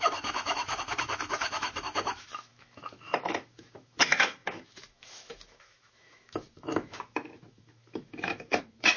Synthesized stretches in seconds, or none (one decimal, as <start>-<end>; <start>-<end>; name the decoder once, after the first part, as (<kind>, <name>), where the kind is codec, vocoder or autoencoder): 0.0-9.0 (autoencoder, DAC-VAE)